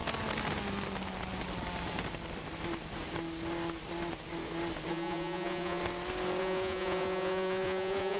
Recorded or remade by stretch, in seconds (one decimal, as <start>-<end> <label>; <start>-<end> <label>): 0.0-4.9 recorded; 4.9-5.8 remade; 5.8-6.4 recorded; 6.4-8.2 remade